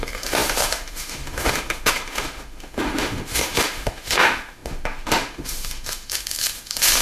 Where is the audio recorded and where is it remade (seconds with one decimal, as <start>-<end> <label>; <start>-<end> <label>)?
0.0-7.0 remade